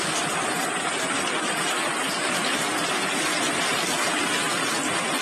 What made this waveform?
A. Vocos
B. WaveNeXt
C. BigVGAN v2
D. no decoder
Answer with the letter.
D